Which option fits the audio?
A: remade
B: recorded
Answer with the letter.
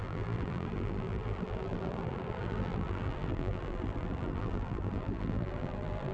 A